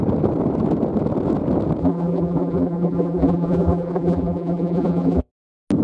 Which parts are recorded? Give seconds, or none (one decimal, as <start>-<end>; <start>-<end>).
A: 0.0-1.8; 5.3-5.8

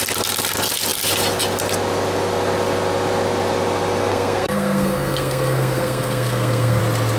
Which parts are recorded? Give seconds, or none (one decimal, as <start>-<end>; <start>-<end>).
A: 0.0-4.0; 6.8-7.2

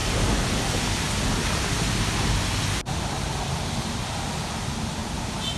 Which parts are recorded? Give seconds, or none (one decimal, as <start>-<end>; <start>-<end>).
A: 0.0-2.3; 5.0-5.6

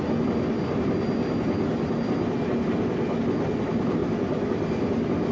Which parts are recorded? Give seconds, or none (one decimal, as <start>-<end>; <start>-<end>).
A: 0.0-5.3

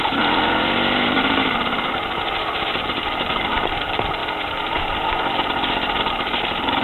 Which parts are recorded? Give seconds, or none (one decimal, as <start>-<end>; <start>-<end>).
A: 4.2-5.9

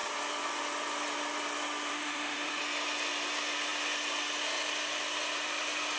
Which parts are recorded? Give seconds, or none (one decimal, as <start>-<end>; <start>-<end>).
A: 0.0-1.9; 2.6-6.0

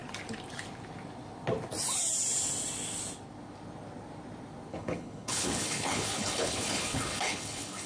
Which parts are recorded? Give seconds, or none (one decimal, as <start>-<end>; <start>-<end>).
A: 0.0-4.7

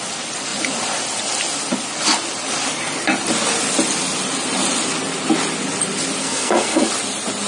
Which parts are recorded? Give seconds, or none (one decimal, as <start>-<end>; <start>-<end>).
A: 0.0-6.2; 6.9-7.5